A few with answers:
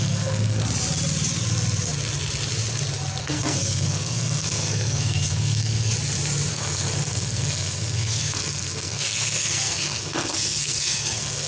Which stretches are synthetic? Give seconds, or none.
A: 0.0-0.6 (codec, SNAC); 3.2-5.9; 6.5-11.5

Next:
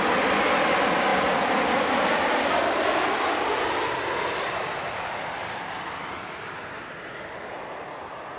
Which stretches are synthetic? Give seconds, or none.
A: 1.1-2.5 (vocoder, BigVGAN v2); 5.4-7.3

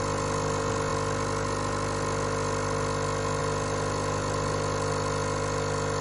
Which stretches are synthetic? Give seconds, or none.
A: none

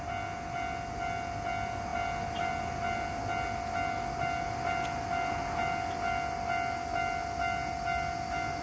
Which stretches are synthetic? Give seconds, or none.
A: none

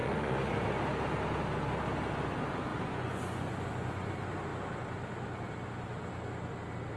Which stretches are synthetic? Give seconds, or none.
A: 0.0-0.5 (vocoder, Vocos); 2.7-4.1